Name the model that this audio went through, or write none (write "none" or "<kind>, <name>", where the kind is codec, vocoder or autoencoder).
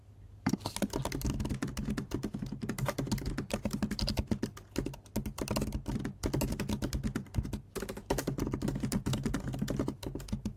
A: none